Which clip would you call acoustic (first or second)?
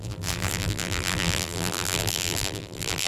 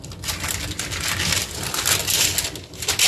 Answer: second